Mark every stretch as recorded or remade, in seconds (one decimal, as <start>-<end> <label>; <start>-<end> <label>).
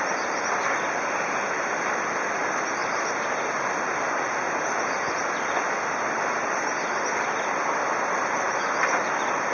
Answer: 0.0-9.5 recorded